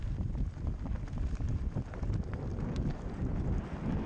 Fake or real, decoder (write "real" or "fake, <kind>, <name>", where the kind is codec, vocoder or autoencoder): real